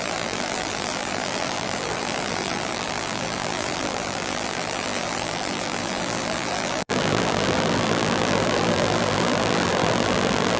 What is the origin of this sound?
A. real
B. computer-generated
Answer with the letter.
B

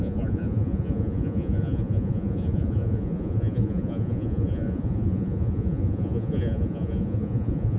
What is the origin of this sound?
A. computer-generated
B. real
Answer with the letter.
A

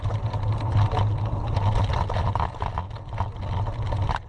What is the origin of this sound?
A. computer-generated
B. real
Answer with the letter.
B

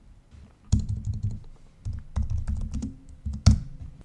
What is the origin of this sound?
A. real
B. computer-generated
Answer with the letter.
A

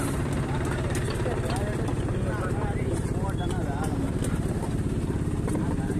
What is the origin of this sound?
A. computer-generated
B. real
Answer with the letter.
A